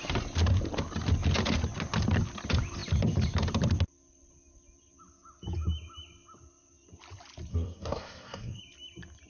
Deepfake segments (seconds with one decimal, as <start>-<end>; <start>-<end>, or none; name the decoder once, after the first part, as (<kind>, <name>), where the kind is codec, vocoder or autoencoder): 7.5-8.6 (codec, SNAC)